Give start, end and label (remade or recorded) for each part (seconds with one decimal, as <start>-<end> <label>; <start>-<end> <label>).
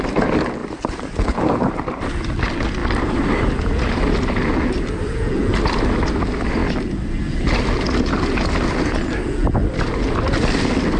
0.0-0.6 recorded; 0.6-2.1 remade; 2.1-2.8 recorded; 2.8-3.5 remade; 3.5-11.0 recorded